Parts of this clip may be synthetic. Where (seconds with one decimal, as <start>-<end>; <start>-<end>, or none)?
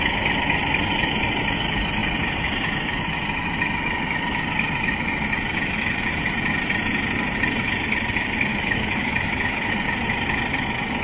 8.5-9.7